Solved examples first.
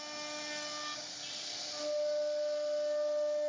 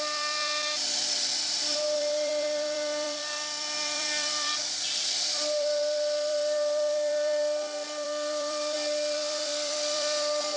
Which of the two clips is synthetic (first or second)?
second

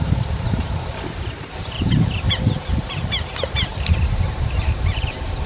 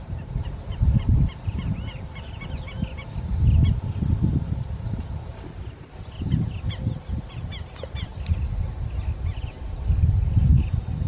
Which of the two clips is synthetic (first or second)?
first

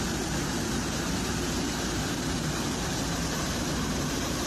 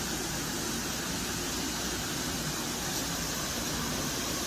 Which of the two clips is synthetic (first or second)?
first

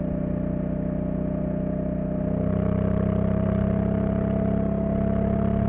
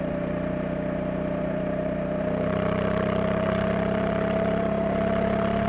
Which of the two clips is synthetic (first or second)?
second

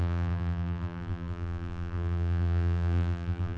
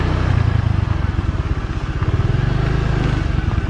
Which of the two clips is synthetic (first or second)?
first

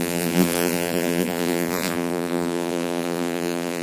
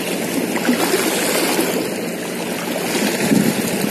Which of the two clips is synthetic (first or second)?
first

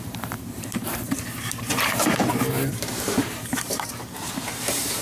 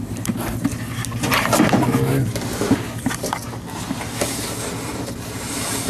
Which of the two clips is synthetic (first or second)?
first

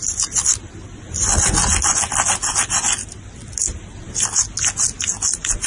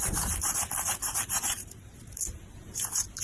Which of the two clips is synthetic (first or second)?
second